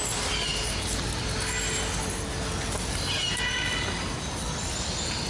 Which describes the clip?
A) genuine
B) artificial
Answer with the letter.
A